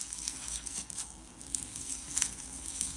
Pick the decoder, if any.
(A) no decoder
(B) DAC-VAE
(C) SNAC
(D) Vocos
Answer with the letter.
C